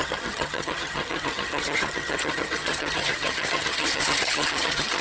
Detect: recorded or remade remade